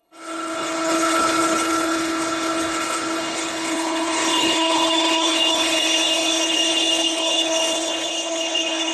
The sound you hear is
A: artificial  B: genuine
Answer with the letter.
A